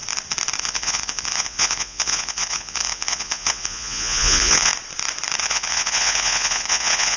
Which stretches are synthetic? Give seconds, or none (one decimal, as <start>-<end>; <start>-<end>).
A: 0.6-4.7; 5.4-7.2